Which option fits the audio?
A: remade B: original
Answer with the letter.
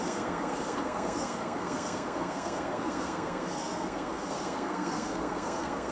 A